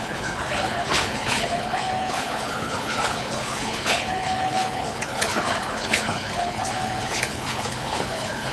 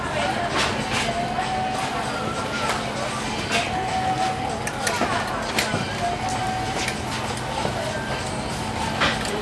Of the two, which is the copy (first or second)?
first